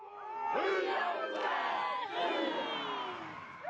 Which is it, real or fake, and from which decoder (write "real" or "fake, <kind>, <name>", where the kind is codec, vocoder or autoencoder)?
real